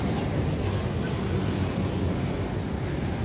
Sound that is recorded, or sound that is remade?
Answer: recorded